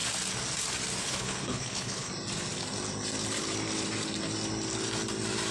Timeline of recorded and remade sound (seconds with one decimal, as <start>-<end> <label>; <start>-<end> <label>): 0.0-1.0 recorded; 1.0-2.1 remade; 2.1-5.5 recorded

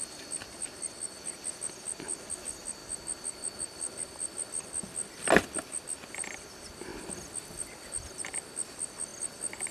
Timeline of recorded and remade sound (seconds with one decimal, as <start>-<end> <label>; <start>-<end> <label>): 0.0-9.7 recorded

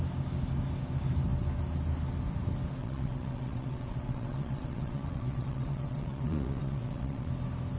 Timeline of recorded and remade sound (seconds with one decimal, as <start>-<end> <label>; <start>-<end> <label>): 0.0-2.8 recorded; 2.8-7.3 remade; 7.3-7.8 recorded

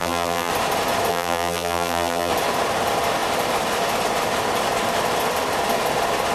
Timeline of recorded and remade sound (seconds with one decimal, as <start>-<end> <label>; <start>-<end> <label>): 0.0-0.5 remade; 0.5-1.1 recorded; 1.1-2.3 remade; 2.3-6.3 recorded